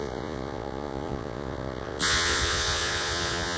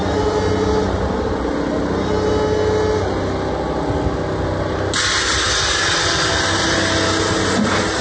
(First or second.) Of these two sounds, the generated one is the first